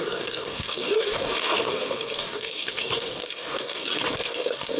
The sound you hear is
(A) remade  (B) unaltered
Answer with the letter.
A